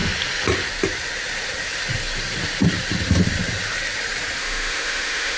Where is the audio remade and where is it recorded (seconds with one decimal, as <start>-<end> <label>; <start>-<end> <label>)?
0.0-4.4 recorded; 4.4-5.4 remade